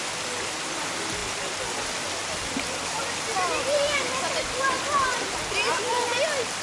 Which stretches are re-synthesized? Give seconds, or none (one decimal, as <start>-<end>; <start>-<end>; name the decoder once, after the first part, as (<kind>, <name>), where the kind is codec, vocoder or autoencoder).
2.2-2.9 (vocoder, BigVGAN v2); 3.3-4.4